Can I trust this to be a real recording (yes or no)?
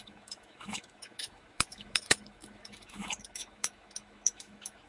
no